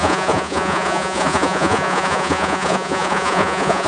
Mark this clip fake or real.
fake